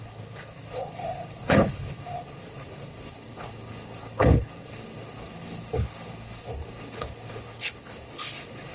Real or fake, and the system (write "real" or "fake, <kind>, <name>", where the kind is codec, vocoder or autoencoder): fake, codec, HILCodec